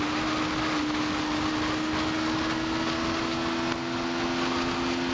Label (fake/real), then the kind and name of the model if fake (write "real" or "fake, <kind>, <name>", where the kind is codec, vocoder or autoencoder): real